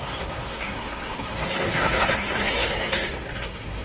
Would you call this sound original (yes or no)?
no